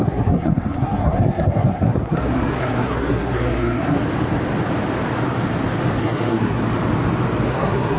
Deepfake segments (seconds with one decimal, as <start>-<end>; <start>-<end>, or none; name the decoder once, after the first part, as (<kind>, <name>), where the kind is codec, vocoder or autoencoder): 0.0-4.0 (codec, SNAC); 6.0-6.6; 7.5-8.0